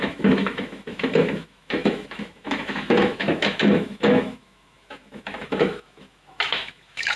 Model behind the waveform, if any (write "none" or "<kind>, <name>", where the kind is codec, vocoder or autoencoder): autoencoder, DAC-VAE